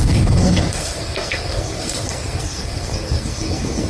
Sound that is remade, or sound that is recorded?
remade